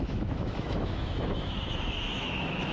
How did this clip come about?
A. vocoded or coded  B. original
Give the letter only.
A